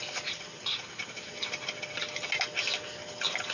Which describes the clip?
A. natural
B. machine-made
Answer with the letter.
A